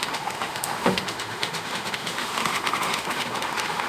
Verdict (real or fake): fake